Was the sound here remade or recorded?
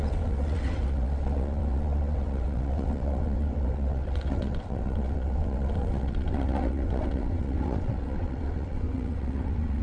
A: remade